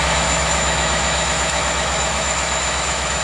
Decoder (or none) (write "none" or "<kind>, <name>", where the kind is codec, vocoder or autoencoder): autoencoder, DAC-VAE